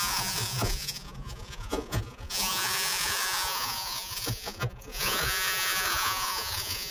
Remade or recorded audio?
remade